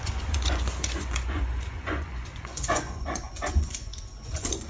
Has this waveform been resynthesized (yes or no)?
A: yes